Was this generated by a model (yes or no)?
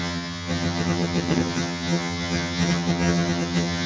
yes